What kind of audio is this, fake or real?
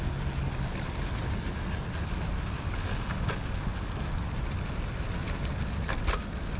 real